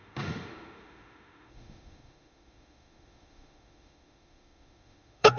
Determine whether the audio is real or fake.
fake